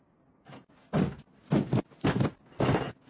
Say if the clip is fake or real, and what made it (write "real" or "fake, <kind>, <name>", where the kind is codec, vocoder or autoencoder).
real